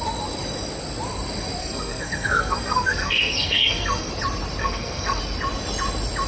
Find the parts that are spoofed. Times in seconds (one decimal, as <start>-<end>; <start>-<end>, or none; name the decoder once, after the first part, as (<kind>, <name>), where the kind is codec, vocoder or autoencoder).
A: 1.6-4.1 (codec, SNAC); 4.6-5.2